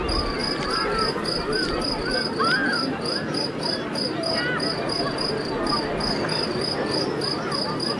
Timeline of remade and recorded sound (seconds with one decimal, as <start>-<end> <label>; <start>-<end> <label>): 0.0-8.0 recorded